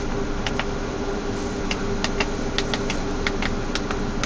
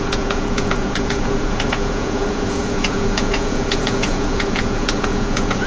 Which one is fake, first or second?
second